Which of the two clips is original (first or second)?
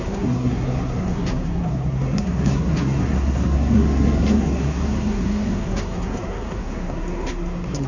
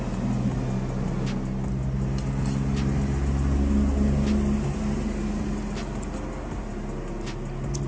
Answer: second